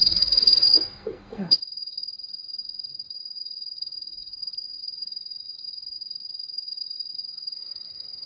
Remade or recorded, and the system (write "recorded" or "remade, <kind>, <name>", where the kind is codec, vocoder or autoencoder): remade, codec, SNAC